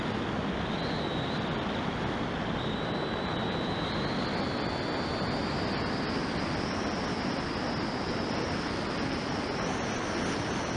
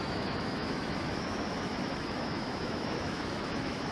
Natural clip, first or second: first